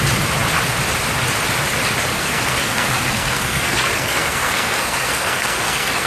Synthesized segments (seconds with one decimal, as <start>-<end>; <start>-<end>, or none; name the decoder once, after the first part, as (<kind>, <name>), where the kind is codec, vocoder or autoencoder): 2.1-6.1 (codec, SNAC)